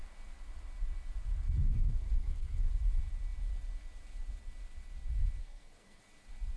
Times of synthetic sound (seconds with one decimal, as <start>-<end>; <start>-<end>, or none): 1.7-2.7; 5.4-6.0